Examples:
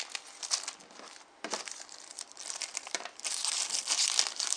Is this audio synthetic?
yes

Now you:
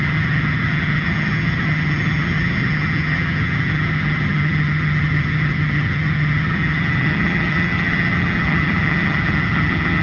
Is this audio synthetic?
yes